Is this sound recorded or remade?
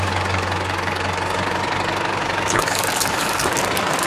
remade